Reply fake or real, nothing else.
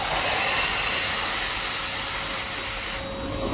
real